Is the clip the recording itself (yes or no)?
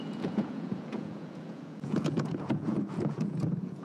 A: no